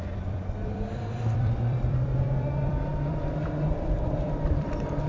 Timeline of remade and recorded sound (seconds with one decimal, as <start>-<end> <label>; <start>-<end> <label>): 0.0-5.1 remade